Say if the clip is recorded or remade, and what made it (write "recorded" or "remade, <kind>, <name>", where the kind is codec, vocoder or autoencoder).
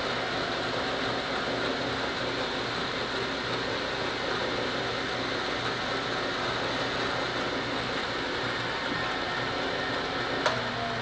recorded